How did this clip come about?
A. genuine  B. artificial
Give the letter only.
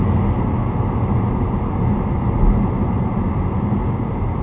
A